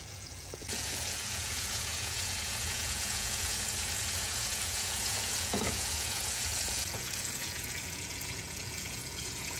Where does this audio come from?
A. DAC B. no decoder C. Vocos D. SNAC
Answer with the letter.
C